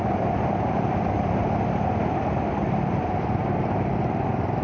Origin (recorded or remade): remade